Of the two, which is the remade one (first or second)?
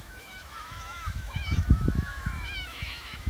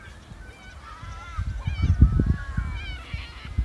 first